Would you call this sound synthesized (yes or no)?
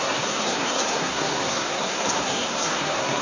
yes